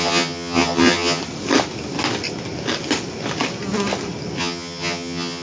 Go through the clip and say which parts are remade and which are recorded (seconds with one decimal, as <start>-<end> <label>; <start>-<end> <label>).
0.0-1.2 remade; 1.2-4.4 recorded; 4.4-5.4 remade